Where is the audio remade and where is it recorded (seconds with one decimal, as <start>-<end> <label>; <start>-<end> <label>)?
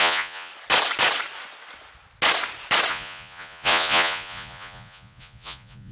0.0-0.5 remade; 0.5-2.9 recorded; 2.9-5.9 remade